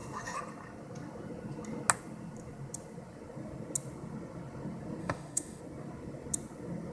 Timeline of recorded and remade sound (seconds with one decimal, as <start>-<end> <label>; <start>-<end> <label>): 0.0-5.0 recorded; 5.0-5.6 remade; 5.6-6.9 recorded